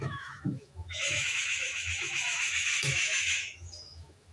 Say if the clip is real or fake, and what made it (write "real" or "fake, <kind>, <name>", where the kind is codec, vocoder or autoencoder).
fake, autoencoder, DAC-VAE